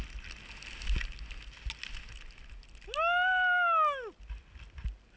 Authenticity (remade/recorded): recorded